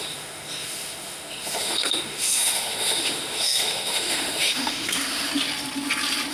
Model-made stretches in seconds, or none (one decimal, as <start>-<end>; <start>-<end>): 0.0-5.3